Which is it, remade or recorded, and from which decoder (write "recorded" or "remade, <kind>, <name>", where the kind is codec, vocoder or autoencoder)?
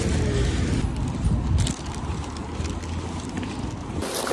recorded